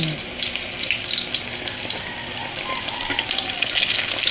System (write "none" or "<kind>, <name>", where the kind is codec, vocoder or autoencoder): none